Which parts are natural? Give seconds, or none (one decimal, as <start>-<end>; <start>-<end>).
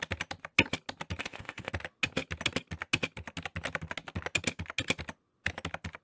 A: 0.0-1.2; 1.7-6.0